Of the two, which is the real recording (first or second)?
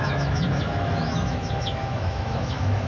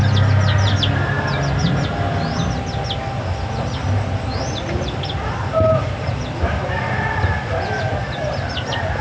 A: second